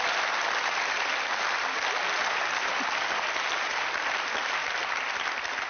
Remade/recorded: recorded